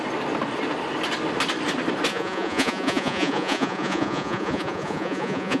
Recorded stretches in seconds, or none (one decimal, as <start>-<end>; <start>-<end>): 0.0-2.1